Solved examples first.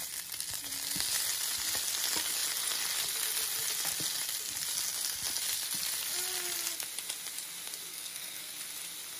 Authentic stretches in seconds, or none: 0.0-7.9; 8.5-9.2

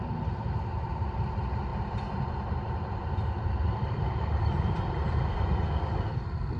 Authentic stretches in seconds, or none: 0.0-1.7; 5.4-6.6

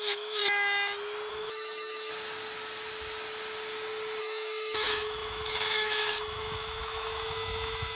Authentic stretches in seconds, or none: 0.4-1.3; 2.1-4.2

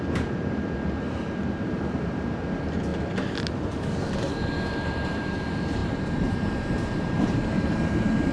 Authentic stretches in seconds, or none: 2.9-4.2

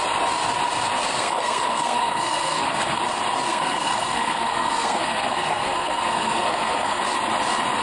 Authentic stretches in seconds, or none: 0.0-1.2; 3.0-3.5; 7.0-7.8

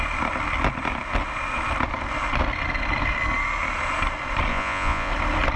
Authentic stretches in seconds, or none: 0.0-4.5; 5.1-5.6

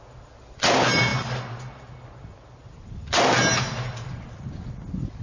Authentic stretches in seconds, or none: 0.0-5.2

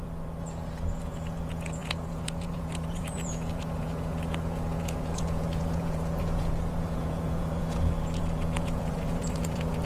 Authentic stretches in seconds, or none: none